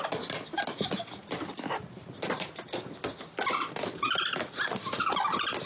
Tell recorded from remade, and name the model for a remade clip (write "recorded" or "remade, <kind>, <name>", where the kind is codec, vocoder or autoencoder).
recorded